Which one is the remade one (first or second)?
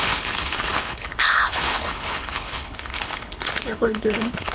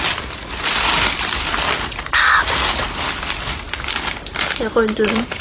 first